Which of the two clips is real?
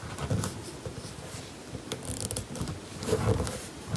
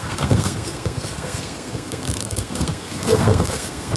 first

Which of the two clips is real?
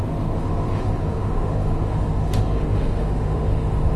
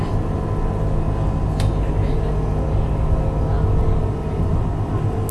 second